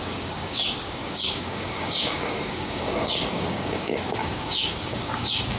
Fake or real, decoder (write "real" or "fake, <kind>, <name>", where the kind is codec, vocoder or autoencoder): fake, codec, DAC